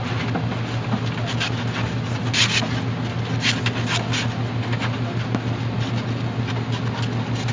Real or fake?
real